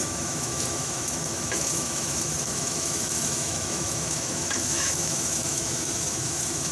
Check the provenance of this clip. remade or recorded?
remade